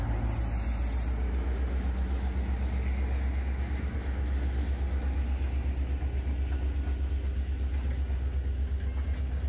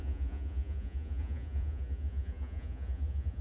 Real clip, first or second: first